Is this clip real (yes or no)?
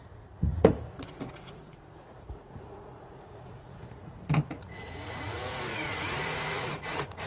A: no